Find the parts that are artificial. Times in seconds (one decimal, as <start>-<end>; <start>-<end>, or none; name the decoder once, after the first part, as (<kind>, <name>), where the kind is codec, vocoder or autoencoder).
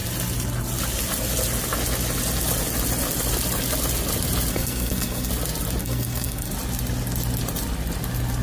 4.5-5.3 (codec, SNAC); 5.8-6.5